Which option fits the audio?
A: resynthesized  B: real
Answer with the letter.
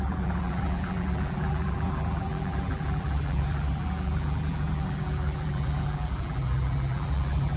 A